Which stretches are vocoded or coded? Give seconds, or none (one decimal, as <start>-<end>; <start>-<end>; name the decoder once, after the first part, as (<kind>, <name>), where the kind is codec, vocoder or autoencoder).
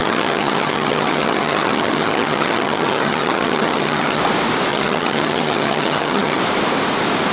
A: 0.0-4.2 (vocoder, HiFi-GAN); 4.7-6.4